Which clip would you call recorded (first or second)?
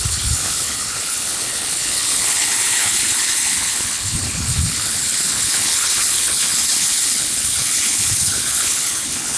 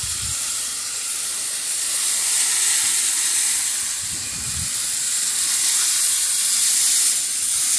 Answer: second